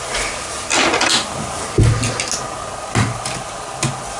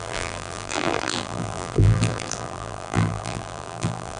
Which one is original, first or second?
first